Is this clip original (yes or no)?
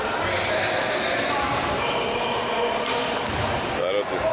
yes